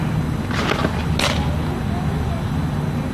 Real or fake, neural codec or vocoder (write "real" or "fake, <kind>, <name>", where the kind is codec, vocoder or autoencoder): real